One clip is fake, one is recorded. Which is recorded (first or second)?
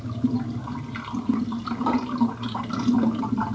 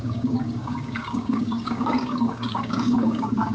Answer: first